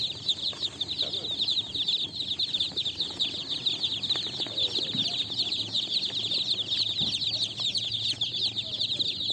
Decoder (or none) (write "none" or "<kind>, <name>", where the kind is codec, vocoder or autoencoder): vocoder, BigVGAN v2